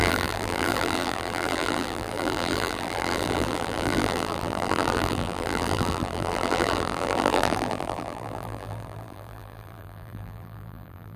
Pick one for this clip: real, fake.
fake